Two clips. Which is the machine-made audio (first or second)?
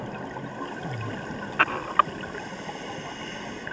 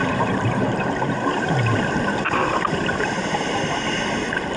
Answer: second